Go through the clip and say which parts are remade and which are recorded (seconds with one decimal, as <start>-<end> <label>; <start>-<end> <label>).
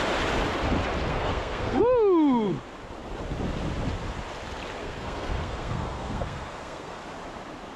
0.0-1.1 recorded; 1.1-1.8 remade; 1.8-4.8 recorded; 4.8-7.0 remade; 7.0-7.8 recorded